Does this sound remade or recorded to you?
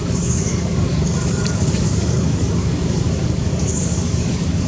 remade